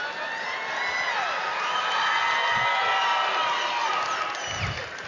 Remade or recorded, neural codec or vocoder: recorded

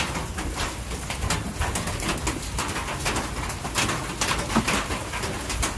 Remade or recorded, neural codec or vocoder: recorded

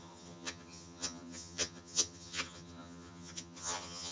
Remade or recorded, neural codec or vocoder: remade, vocoder, HiFi-GAN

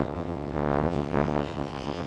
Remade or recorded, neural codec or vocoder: remade, vocoder, WaveNeXt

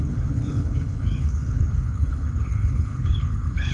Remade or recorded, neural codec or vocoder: remade, codec, HILCodec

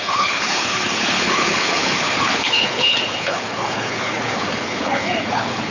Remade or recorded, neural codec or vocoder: remade, codec, HILCodec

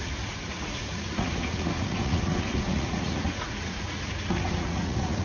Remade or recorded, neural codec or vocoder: remade, vocoder, Vocos